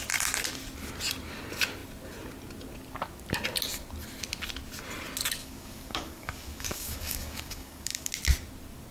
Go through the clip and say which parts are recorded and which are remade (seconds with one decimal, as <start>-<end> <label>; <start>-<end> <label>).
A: 0.0-5.4 recorded; 5.4-8.1 remade; 8.1-8.9 recorded